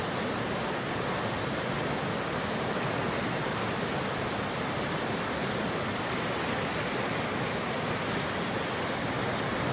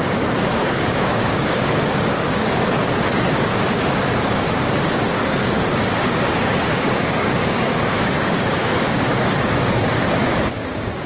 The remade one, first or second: second